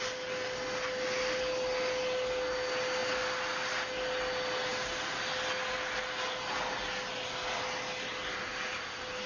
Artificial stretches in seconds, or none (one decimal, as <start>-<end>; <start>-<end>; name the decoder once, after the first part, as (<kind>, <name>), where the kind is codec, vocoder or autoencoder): none